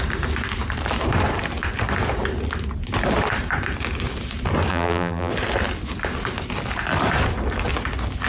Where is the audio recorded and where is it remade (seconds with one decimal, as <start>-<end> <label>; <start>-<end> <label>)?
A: 0.0-4.7 recorded; 4.7-5.3 remade; 5.3-8.3 recorded